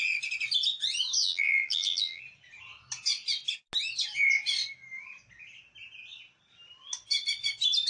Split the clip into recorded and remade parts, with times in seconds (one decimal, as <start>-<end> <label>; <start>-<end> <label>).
0.0-1.2 recorded; 1.2-2.2 remade; 2.2-7.9 recorded